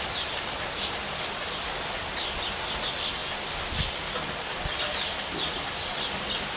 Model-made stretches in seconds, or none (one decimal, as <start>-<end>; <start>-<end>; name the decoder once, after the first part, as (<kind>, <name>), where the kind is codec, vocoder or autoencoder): none